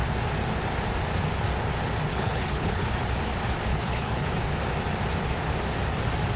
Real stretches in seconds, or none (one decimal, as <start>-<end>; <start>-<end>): 0.0-2.1; 2.9-3.7; 4.3-6.4